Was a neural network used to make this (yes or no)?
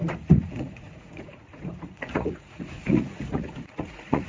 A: yes